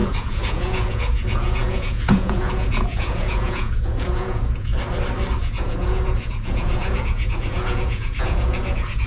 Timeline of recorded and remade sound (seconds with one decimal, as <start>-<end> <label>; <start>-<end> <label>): 0.0-4.7 remade; 4.7-5.4 recorded; 5.4-9.1 remade